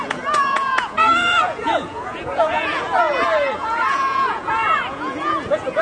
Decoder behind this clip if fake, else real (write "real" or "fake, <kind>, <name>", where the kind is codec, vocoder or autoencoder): fake, vocoder, Vocos